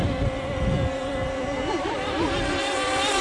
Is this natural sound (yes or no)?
yes